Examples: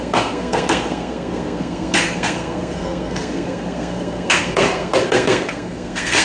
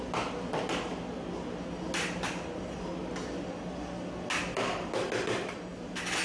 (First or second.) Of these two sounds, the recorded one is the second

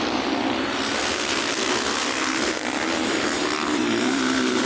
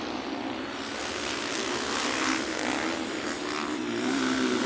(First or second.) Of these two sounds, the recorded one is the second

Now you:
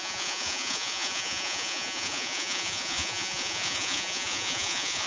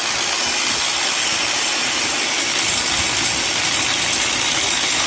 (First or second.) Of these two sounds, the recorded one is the second